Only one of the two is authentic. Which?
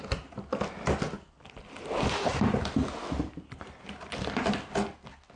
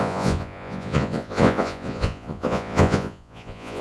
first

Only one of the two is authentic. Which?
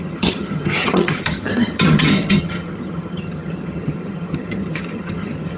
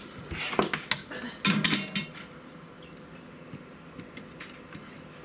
second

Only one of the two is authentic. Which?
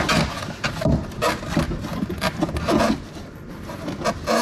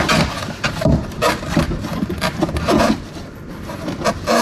first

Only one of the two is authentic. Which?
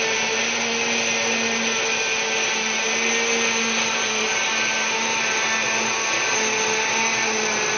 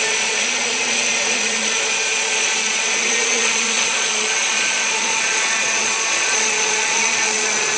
first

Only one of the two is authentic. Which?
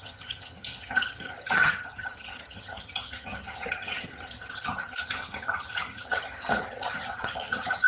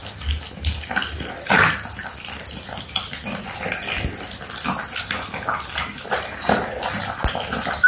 second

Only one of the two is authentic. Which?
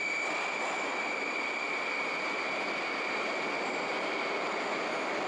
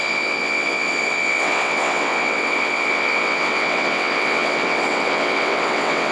first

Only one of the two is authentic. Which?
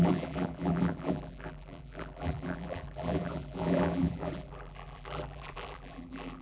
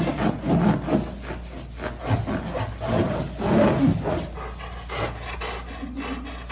second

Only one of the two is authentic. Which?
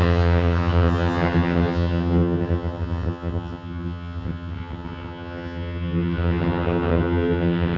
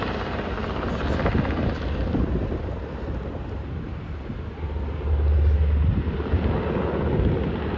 second